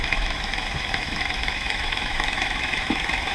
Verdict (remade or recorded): remade